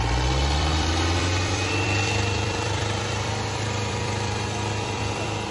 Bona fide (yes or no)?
no